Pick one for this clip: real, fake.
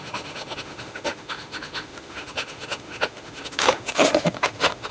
fake